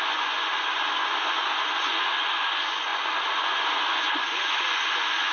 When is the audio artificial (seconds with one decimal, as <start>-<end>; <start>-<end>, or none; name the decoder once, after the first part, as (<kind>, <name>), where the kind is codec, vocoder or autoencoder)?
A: 0.0-5.3 (vocoder, Vocos)